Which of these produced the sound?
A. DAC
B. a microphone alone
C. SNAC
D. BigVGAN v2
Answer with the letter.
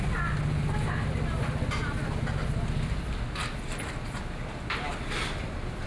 B